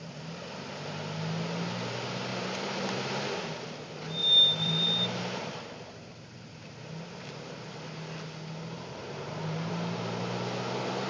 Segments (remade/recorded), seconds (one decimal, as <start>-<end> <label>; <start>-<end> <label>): 0.0-2.3 recorded; 2.3-3.1 remade; 3.1-4.2 recorded; 4.2-6.2 remade; 6.2-9.0 recorded; 9.0-9.7 remade; 9.7-11.1 recorded